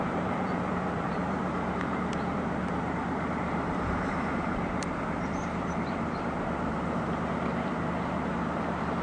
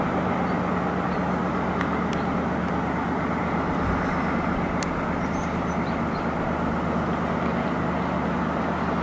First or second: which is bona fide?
second